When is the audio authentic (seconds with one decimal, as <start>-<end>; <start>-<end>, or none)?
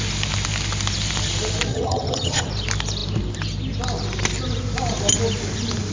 0.0-1.7; 2.5-5.9